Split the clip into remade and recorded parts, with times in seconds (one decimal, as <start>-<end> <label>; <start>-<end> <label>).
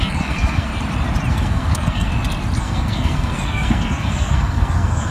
0.0-0.7 remade; 0.7-1.3 recorded; 1.3-2.1 remade; 2.1-2.6 recorded; 2.6-5.1 remade